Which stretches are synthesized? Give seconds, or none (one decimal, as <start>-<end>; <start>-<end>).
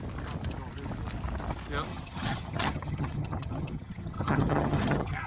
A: 1.9-5.3